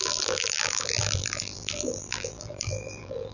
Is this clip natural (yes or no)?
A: no